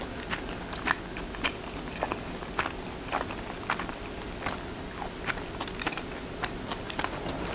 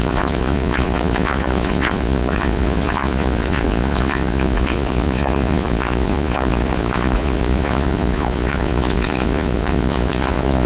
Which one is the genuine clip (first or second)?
first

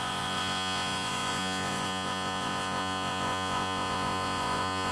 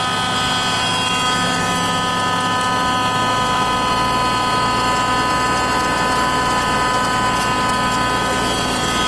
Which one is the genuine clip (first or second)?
second